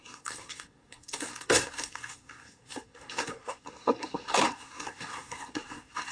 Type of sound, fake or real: fake